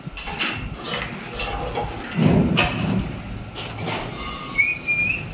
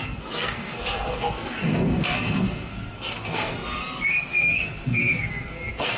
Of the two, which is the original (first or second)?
first